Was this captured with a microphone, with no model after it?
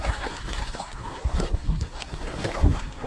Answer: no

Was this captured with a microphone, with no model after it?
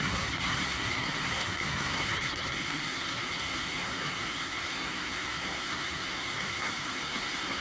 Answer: no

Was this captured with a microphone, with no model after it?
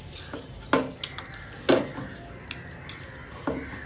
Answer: yes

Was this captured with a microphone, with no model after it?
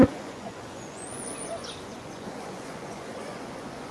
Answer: no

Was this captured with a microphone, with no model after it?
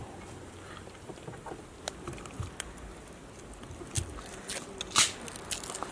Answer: yes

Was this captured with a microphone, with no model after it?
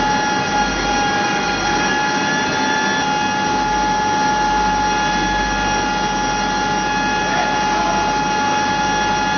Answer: yes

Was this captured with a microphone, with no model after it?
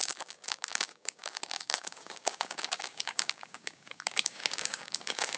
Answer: no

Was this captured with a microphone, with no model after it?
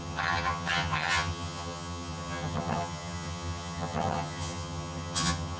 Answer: no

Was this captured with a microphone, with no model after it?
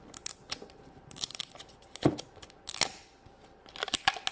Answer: yes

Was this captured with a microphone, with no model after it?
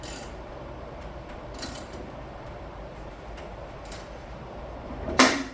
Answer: no